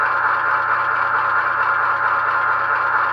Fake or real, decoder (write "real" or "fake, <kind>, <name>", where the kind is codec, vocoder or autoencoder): real